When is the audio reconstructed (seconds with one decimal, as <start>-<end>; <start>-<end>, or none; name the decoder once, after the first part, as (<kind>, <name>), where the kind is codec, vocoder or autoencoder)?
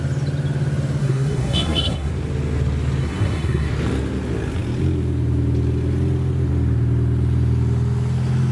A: 1.0-2.1 (codec, SNAC); 3.0-3.7